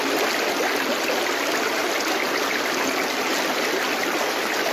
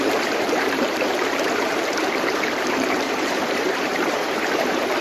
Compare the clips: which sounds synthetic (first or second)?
second